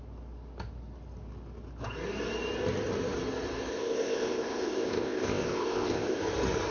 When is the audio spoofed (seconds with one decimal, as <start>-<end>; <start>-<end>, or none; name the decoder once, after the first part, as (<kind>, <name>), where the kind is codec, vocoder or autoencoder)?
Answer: 3.7-6.2 (codec, ZipCodec)